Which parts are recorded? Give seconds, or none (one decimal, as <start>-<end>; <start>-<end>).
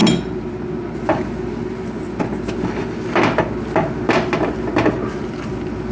0.0-5.9